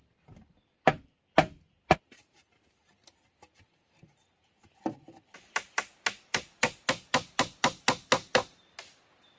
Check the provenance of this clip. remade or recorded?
recorded